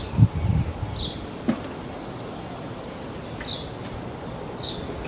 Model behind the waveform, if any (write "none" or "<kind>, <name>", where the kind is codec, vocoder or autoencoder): none